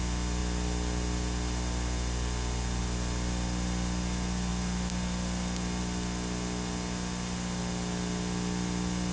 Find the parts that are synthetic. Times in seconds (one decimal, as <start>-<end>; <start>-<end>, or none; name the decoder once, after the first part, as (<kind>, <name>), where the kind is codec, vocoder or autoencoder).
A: none

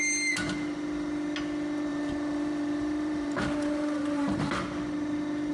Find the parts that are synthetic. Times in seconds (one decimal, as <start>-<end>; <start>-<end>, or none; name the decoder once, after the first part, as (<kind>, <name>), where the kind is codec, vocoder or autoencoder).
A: 1.9-4.4 (vocoder, BigVGAN v2)

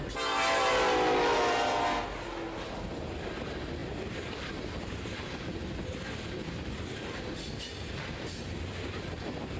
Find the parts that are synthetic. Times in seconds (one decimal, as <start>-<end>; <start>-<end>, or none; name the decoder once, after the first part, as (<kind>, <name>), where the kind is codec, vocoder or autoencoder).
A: none

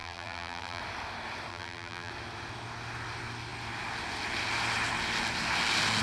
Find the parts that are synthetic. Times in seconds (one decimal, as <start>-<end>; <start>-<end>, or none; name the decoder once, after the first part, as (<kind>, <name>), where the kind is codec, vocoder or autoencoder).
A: 0.0-0.8 (vocoder, BigVGAN v2); 1.5-2.1

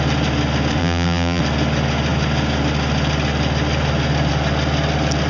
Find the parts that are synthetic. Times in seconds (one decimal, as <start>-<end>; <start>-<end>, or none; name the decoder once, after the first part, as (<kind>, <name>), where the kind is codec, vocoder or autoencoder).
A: 0.8-1.4 (vocoder, BigVGAN v2)